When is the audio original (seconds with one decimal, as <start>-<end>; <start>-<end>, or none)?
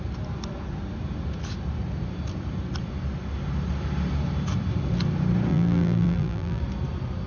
0.0-5.5; 6.6-7.3